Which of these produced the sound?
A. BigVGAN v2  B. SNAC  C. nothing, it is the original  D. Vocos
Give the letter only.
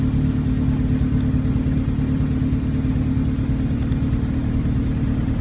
C